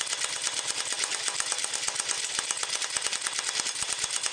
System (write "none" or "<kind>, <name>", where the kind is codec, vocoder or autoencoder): none